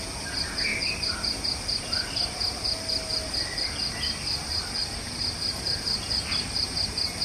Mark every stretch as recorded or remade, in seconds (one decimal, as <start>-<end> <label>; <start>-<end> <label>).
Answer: 0.0-7.2 recorded